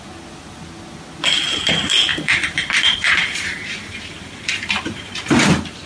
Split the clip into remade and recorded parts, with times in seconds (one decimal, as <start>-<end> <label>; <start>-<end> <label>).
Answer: 0.0-2.1 recorded; 2.1-5.5 remade; 5.5-5.9 recorded